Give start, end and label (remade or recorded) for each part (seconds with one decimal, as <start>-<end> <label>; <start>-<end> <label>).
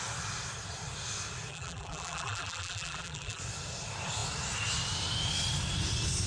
0.0-1.5 recorded; 1.5-3.4 remade; 3.4-6.3 recorded